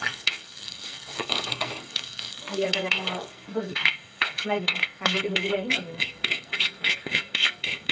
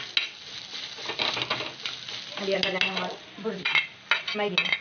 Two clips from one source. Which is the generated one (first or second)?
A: first